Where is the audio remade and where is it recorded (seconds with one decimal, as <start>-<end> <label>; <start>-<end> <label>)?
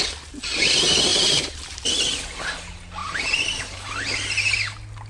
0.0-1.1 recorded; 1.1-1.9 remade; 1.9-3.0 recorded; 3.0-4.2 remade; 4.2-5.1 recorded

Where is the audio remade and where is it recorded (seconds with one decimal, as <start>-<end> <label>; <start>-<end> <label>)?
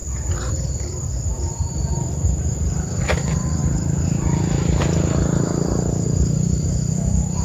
0.0-0.5 recorded; 0.5-7.4 remade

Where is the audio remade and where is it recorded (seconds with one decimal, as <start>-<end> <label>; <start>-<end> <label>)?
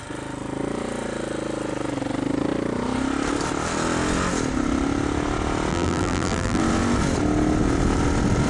0.0-5.7 recorded; 5.7-6.6 remade; 6.6-8.5 recorded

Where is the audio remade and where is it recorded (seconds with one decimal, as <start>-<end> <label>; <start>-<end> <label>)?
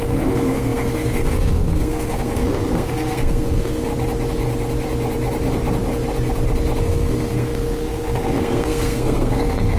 0.0-3.9 remade; 3.9-6.8 recorded; 6.8-9.8 remade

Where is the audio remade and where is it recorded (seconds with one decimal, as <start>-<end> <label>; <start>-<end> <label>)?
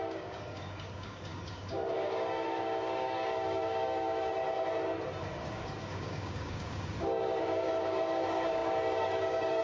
0.0-4.3 remade; 4.3-5.4 recorded; 5.4-9.6 remade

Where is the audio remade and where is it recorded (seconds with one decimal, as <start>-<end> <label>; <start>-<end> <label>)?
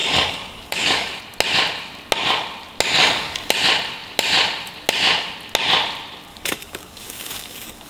0.0-1.2 remade; 1.2-3.0 recorded; 3.0-3.5 remade; 3.5-6.3 recorded; 6.3-7.9 remade